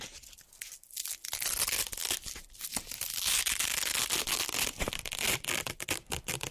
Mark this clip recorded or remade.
recorded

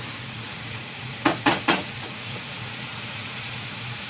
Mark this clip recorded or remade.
remade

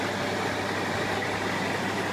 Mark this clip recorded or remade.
recorded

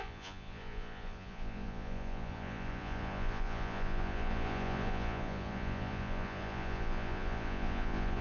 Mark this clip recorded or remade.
remade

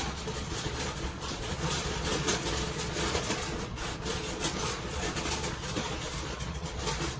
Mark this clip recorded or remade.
remade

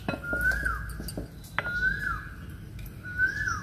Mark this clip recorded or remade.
recorded